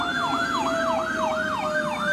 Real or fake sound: real